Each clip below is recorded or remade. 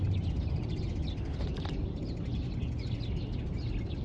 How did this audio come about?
recorded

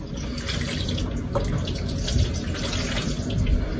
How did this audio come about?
recorded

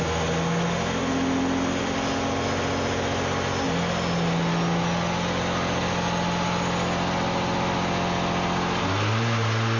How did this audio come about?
recorded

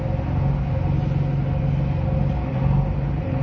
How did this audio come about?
recorded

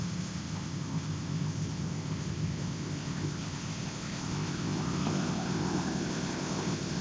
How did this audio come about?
remade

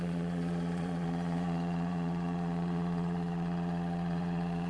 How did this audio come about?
remade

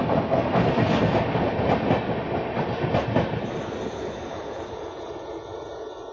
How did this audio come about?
recorded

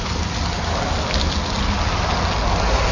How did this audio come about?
recorded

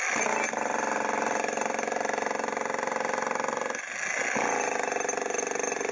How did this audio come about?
recorded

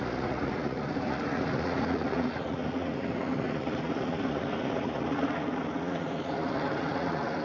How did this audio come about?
remade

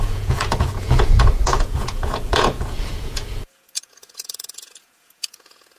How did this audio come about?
remade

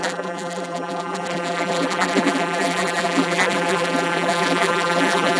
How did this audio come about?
remade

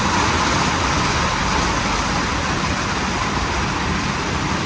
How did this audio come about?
remade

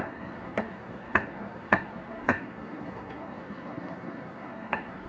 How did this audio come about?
remade